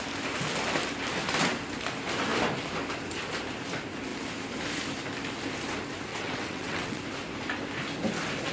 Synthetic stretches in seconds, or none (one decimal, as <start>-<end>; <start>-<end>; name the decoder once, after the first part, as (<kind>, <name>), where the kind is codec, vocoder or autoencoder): 6.1-7.0 (vocoder, WaveNeXt)